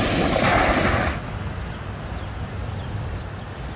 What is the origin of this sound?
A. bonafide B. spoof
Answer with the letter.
A